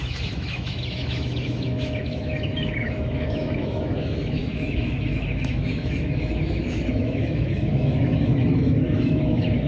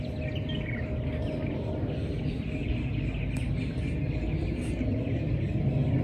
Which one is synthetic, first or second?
first